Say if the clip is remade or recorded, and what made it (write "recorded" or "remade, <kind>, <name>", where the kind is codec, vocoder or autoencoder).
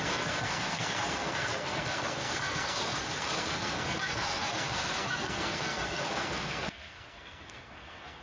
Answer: remade, codec, SNAC